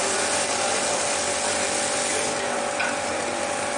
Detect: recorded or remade recorded